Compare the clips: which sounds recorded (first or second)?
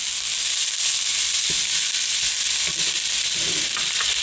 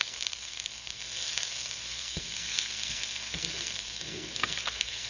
first